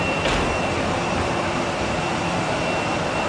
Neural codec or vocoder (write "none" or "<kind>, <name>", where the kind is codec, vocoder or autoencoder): none